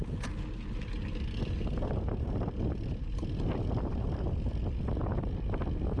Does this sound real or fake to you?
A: real